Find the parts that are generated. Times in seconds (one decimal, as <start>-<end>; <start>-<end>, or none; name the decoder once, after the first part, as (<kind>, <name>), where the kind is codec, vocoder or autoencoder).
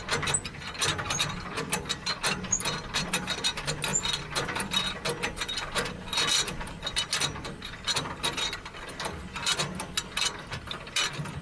none